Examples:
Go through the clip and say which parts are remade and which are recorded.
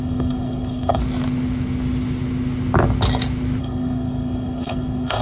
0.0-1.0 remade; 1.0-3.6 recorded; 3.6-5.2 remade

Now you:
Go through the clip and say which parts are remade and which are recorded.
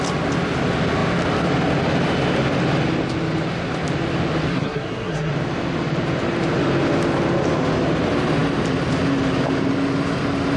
0.0-4.5 recorded; 4.5-5.3 remade; 5.3-10.6 recorded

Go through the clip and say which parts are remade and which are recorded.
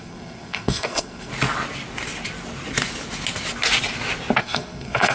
0.0-1.3 remade; 1.3-4.4 recorded; 4.4-5.1 remade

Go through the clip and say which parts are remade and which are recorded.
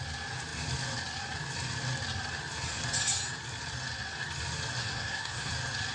0.0-4.8 recorded; 4.8-5.5 remade; 5.5-5.9 recorded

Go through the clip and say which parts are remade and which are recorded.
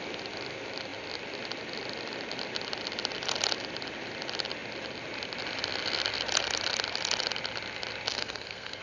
0.0-8.1 recorded; 8.1-8.8 remade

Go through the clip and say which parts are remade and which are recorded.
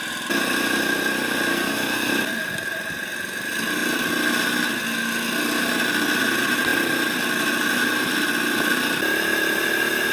0.0-1.5 recorded; 1.5-2.1 remade; 2.1-10.1 recorded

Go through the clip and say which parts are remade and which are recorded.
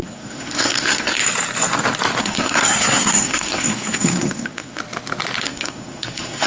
0.0-1.2 remade; 1.2-2.2 recorded; 2.2-4.8 remade; 4.8-5.4 recorded; 5.4-6.5 remade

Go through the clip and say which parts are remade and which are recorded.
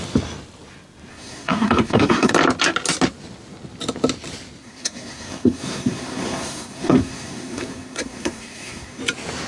0.0-1.1 recorded; 1.1-2.3 remade; 2.3-4.6 recorded; 4.6-9.0 remade; 9.0-9.5 recorded